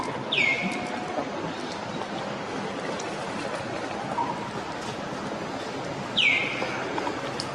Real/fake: real